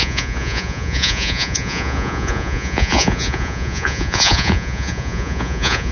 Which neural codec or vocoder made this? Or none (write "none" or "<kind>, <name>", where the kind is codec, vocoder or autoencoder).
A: vocoder, Vocos